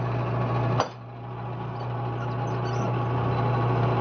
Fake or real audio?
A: real